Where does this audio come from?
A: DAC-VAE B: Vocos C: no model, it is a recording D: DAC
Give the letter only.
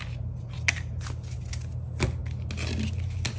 C